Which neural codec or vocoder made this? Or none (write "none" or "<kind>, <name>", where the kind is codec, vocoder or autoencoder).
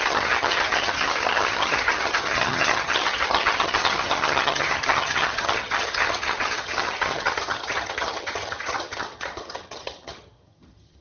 vocoder, HiFi-GAN